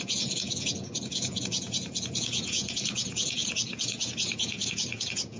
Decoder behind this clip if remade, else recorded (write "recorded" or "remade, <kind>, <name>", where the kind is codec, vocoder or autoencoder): remade, vocoder, Vocos